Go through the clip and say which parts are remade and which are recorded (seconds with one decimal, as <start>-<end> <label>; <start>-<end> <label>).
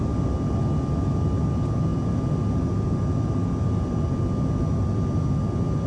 0.0-5.9 recorded